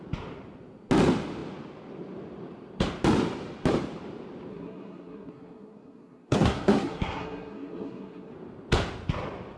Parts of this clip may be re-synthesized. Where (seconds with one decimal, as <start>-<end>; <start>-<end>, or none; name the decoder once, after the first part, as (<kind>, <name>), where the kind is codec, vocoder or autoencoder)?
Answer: 4.5-8.3 (codec, SNAC)